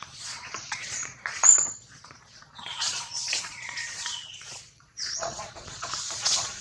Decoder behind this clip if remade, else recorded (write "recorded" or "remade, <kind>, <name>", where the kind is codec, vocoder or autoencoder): remade, vocoder, Vocos